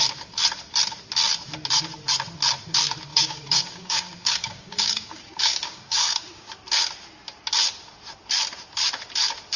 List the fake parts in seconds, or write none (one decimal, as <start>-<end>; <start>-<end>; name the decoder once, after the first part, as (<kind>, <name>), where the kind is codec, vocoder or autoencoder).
3.1-6.5 (codec, DAC)